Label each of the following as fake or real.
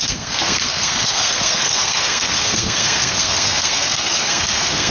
fake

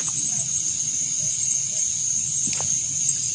real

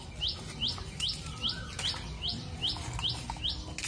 real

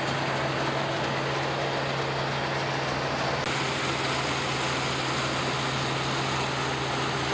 real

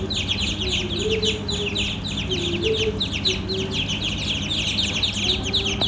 real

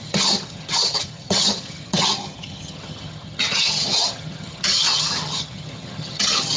fake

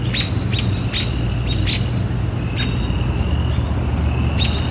real